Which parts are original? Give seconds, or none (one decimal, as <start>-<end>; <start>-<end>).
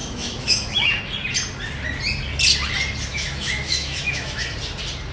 1.0-3.1; 4.4-5.1